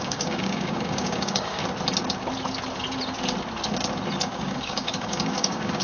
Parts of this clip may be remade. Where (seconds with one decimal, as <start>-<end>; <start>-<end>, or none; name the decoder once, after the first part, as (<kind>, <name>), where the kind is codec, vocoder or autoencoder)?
0.0-1.6 (codec, DAC); 4.2-5.8

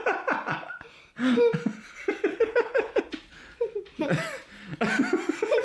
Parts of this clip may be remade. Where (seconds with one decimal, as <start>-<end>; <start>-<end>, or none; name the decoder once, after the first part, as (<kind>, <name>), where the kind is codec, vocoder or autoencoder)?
2.3-3.0 (codec, HILCodec)

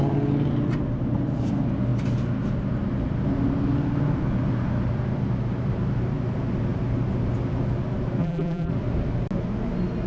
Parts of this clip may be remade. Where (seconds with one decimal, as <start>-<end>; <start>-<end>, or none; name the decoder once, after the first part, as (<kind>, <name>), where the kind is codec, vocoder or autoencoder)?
8.2-8.7 (vocoder, BigVGAN v2)

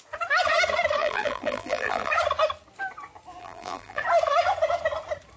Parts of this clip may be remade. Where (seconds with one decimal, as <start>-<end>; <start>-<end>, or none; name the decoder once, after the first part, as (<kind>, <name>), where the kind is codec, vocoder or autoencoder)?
1.0-2.1 (vocoder, BigVGAN v2); 3.4-4.0